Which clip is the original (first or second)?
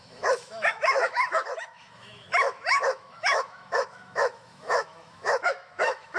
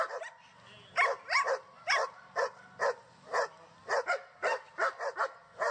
second